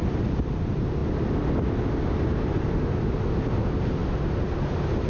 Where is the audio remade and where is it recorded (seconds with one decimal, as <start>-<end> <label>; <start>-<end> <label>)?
0.0-5.1 recorded